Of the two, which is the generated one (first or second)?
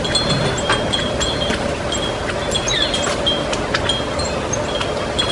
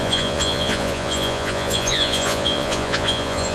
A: second